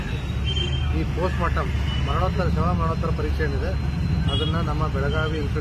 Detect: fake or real real